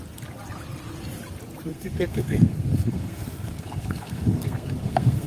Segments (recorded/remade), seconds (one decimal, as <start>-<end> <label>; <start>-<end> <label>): 0.0-1.7 recorded; 1.7-5.3 remade